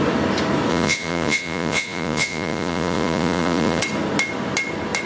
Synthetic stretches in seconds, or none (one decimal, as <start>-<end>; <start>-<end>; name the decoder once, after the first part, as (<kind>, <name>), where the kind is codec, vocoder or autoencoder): 0.7-3.8 (vocoder, Vocos)